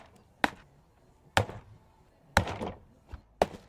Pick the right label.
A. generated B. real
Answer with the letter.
B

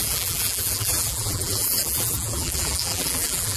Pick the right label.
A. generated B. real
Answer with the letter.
A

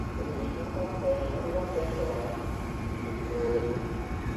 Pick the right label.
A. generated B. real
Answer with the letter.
A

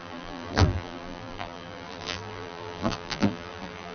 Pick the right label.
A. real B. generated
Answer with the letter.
B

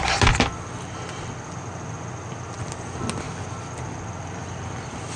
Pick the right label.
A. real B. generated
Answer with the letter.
A